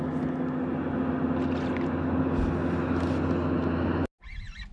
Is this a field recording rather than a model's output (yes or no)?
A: yes